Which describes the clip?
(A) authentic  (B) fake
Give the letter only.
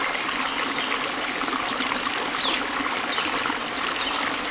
A